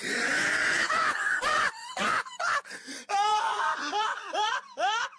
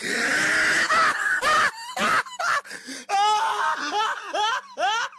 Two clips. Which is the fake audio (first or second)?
first